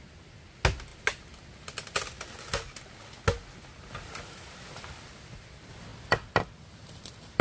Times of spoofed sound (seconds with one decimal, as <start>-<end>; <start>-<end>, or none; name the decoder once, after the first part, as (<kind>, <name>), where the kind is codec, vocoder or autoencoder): none